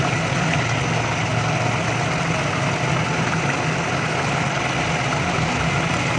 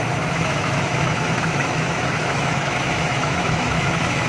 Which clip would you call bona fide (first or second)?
first